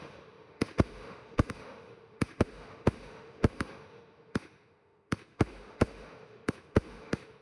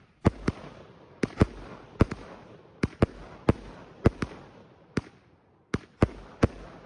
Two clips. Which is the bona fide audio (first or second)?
second